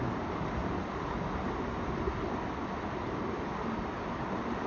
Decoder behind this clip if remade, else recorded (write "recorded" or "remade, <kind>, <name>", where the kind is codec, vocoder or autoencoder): recorded